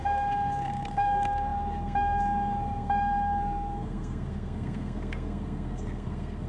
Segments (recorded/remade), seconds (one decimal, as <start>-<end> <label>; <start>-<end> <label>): 0.0-6.5 remade